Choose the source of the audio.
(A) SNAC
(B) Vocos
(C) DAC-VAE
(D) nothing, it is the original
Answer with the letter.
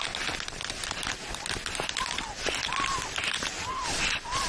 D